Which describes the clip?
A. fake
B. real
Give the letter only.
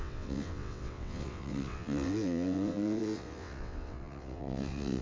A